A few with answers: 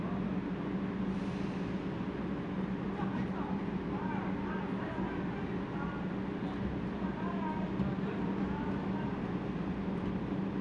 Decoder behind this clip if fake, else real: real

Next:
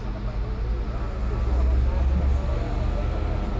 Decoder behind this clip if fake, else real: real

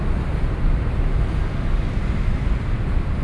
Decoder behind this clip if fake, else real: real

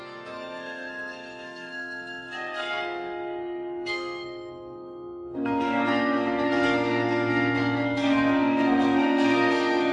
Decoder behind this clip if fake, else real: fake, codec, SNAC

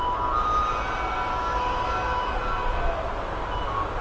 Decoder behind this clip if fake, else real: real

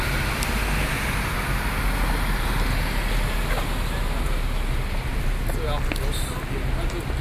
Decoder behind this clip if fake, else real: real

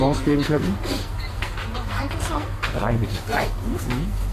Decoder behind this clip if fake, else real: fake, codec, SNAC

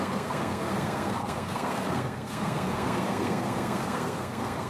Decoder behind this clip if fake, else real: fake, codec, SNAC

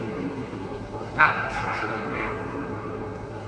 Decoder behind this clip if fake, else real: fake, codec, SNAC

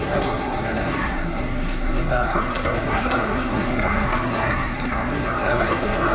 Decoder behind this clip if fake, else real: fake, codec, SNAC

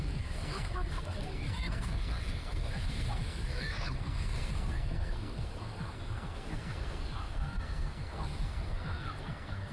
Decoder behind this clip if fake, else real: fake, codec, SNAC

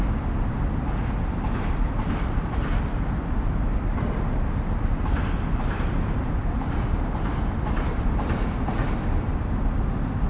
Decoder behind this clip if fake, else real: real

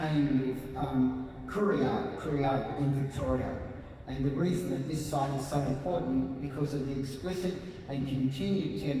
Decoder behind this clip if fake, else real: fake, codec, SNAC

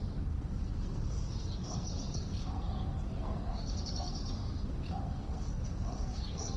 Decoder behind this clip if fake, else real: fake, codec, SNAC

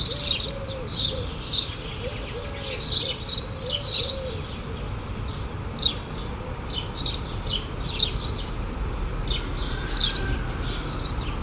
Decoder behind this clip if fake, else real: real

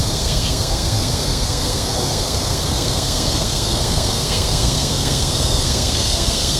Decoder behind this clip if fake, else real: fake, codec, SNAC